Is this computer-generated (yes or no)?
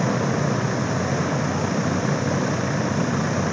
no